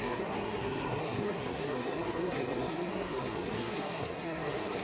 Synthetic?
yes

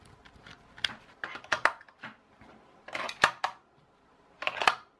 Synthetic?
no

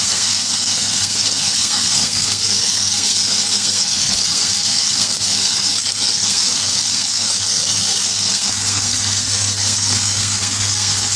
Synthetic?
yes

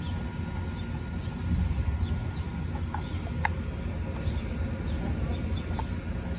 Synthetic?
no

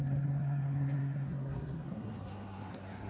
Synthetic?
yes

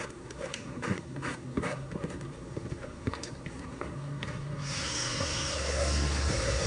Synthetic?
yes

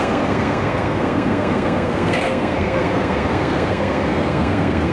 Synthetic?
yes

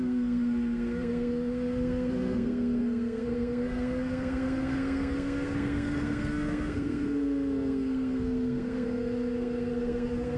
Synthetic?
yes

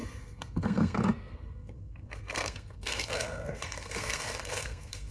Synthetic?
yes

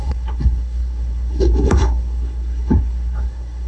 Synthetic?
yes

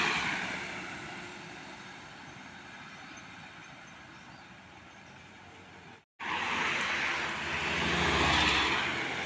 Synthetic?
no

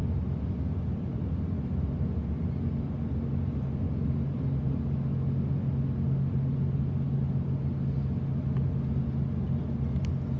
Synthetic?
no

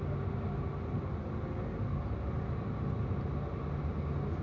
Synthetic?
no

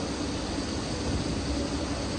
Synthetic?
no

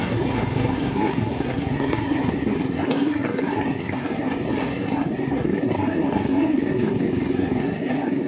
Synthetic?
yes